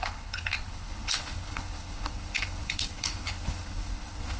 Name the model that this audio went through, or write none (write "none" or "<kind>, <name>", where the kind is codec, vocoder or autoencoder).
codec, HILCodec